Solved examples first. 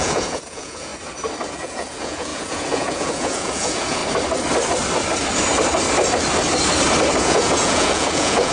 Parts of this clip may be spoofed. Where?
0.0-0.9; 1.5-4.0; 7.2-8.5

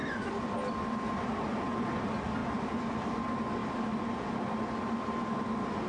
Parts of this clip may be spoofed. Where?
none

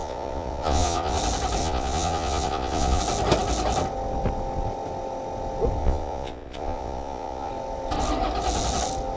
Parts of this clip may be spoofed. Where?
0.0-1.2; 1.6-3.0; 5.8-7.5

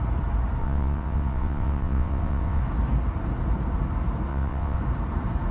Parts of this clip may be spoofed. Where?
0.6-2.6; 4.3-4.8

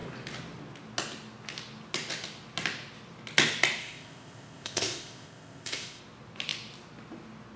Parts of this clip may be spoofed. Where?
3.8-6.0

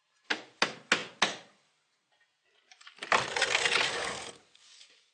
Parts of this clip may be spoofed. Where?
3.9-5.1

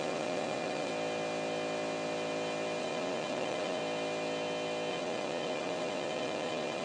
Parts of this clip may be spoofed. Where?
0.0-0.9; 2.8-3.8; 4.9-6.8

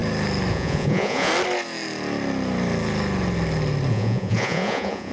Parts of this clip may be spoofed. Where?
0.5-1.3; 3.9-5.1